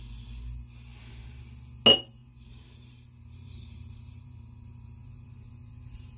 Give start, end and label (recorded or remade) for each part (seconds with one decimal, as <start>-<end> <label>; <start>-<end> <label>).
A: 0.0-0.9 recorded; 0.9-1.4 remade; 1.4-2.2 recorded; 2.2-6.2 remade